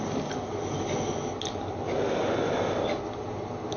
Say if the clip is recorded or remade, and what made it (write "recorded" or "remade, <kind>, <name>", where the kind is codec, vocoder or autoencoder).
recorded